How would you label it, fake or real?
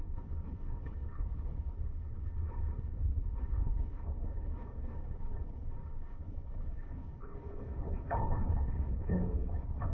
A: fake